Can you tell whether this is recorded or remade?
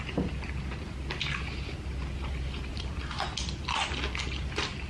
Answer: recorded